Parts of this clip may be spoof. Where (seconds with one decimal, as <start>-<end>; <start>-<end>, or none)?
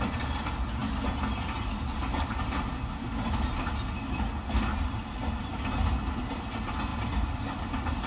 5.5-6.2; 6.9-8.1